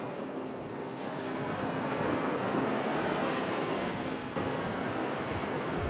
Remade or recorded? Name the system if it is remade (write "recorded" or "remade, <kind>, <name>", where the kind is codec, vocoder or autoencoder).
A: remade, codec, SNAC